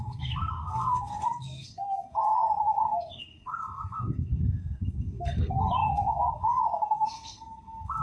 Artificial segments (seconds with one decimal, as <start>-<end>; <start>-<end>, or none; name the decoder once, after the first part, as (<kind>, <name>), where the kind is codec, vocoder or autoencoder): 0.0-8.0 (codec, SNAC)